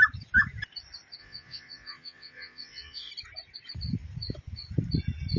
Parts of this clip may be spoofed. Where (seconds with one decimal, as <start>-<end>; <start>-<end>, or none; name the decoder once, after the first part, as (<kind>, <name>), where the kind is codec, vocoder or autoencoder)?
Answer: 1.2-3.1 (vocoder, Vocos)